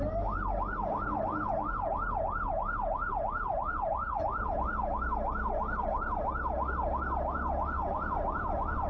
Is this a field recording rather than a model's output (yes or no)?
yes